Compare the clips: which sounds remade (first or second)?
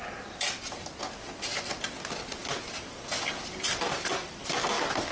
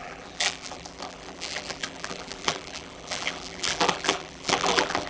second